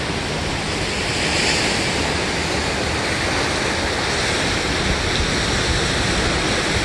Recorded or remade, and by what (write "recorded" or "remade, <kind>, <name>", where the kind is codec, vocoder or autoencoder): recorded